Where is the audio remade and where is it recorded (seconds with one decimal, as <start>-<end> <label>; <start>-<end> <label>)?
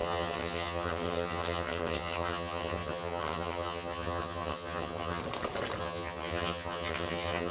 0.0-5.2 remade; 5.2-5.8 recorded; 5.8-7.5 remade